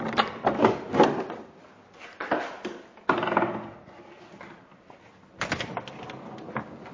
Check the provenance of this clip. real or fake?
real